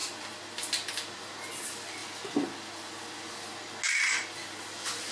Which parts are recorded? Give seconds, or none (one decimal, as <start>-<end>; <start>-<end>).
0.0-5.1